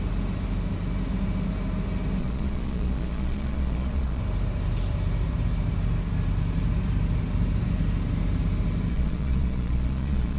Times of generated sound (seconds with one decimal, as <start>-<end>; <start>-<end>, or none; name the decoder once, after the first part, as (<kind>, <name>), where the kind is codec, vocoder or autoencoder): 2.2-4.2 (vocoder, Vocos); 8.9-10.4